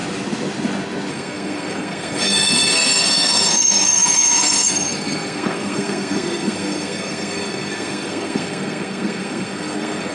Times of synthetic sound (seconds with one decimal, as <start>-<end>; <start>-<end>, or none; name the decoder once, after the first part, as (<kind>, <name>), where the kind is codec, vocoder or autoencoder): 1.1-10.1 (codec, SNAC)